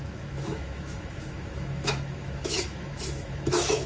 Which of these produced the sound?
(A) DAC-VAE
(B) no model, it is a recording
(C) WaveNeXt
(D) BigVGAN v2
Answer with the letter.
A